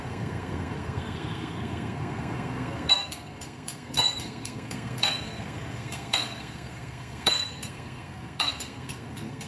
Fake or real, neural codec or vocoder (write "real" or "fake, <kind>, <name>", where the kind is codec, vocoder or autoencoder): fake, codec, SNAC